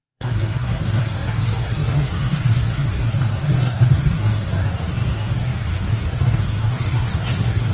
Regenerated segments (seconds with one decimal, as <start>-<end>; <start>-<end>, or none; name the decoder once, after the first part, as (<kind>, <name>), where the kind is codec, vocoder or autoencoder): 0.0-7.7 (codec, SNAC)